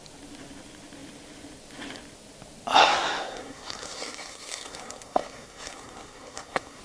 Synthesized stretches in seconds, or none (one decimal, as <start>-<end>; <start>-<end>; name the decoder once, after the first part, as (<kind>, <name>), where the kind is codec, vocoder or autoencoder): 2.8-6.8 (codec, SNAC)